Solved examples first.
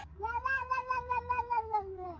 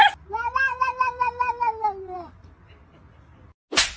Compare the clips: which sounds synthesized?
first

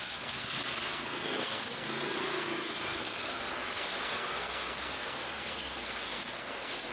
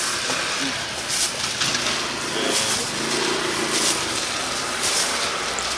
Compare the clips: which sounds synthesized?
first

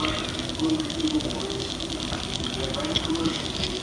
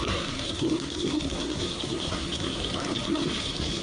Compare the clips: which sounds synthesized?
second